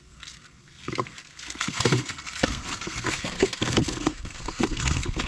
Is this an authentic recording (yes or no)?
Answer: no